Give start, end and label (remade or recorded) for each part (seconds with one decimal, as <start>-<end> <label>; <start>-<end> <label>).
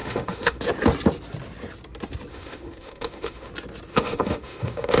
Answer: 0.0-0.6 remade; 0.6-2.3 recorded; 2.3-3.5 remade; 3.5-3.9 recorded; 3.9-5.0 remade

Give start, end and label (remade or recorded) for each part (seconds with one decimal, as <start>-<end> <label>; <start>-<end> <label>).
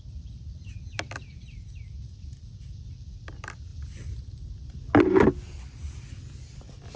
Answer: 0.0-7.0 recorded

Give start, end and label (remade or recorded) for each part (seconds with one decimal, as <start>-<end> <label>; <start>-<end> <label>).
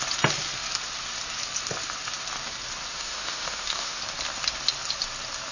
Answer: 0.0-2.9 recorded; 2.9-4.0 remade; 4.0-5.5 recorded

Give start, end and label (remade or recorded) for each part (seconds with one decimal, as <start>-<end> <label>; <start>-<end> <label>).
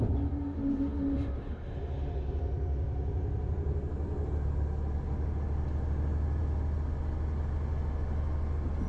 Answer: 0.0-8.9 recorded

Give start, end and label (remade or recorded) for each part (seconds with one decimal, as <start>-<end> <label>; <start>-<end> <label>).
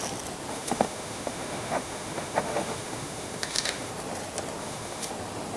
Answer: 0.0-0.5 recorded; 0.5-3.9 remade; 3.9-4.6 recorded; 4.6-5.1 remade; 5.1-5.6 recorded